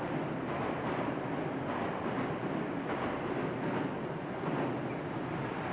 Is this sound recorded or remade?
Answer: recorded